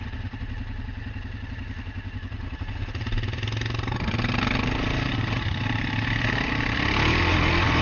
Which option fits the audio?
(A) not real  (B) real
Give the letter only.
B